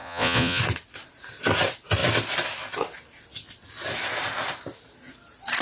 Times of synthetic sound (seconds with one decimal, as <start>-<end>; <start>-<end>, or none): 0.0-0.6